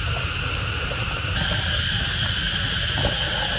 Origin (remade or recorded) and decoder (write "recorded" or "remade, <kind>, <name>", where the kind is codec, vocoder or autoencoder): recorded